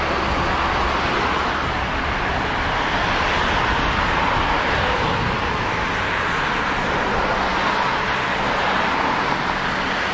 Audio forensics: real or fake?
real